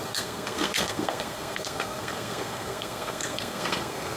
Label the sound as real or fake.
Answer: fake